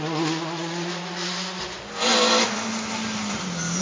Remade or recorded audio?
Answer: recorded